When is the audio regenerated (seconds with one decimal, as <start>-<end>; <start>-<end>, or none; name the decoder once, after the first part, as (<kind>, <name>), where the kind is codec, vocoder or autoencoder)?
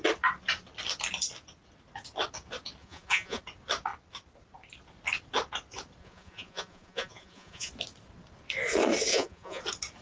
2.8-3.4 (vocoder, Vocos); 6.0-7.7; 9.1-9.6